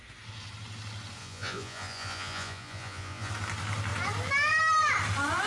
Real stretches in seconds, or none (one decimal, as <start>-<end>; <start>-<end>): 0.0-1.2; 3.3-5.5